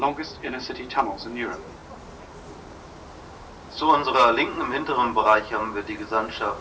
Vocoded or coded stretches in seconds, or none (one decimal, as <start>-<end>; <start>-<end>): none